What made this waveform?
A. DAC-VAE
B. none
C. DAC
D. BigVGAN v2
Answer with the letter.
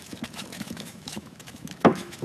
A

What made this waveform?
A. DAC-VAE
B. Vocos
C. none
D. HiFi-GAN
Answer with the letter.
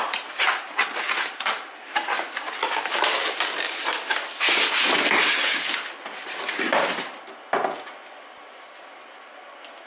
C